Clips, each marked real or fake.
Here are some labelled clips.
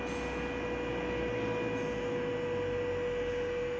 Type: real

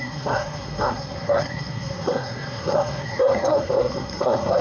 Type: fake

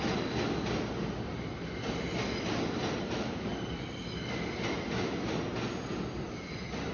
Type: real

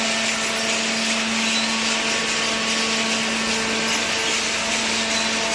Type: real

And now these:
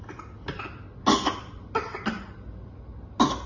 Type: real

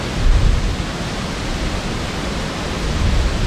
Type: real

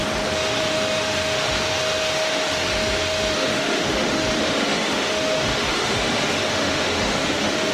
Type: fake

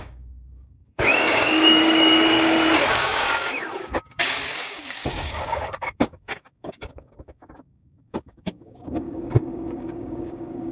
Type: fake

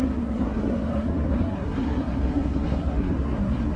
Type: fake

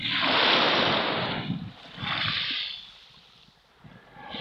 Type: real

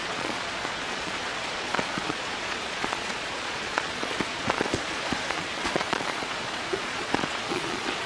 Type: fake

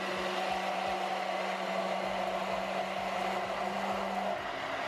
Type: real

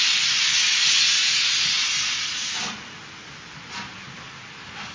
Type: real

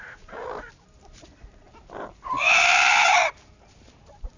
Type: fake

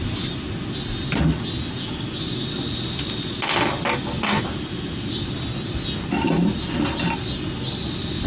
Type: real